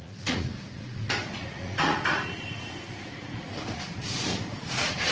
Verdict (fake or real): fake